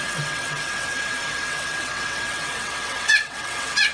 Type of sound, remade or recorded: remade